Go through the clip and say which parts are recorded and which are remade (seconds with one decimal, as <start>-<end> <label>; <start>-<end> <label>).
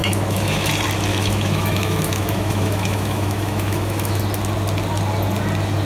0.0-0.7 remade; 0.7-1.1 recorded; 1.1-4.2 remade; 4.2-5.9 recorded